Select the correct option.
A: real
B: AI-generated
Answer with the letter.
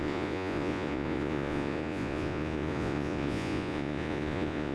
B